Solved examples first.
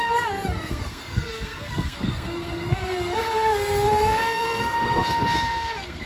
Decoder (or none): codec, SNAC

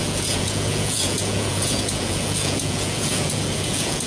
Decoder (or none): vocoder, Vocos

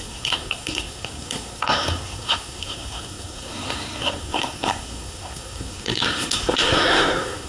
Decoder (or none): codec, SNAC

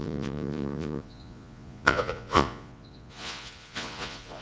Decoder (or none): vocoder, Vocos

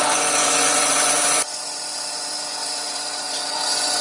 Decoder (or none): vocoder, Vocos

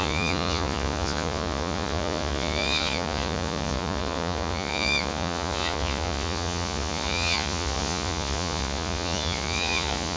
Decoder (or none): vocoder, Vocos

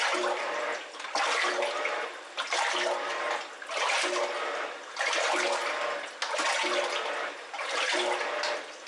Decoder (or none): none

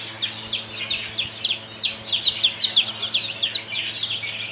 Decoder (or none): none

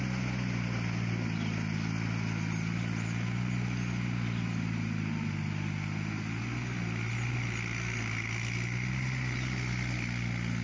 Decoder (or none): none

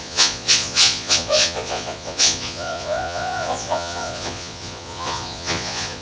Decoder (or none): vocoder, Vocos